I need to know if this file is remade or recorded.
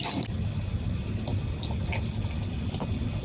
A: recorded